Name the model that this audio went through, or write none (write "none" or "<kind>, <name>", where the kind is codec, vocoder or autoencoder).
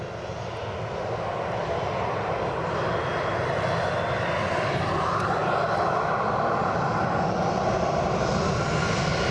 none